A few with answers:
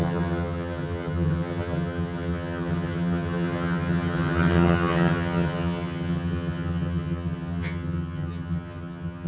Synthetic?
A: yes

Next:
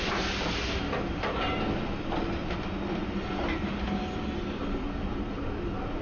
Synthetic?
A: no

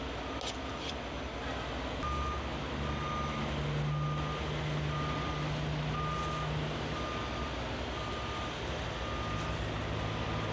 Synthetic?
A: no